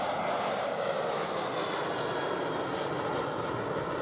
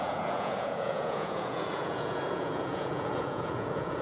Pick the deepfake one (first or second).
second